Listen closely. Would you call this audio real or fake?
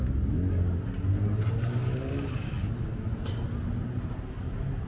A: real